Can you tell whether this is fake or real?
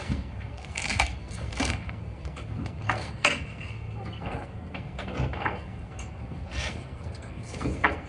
fake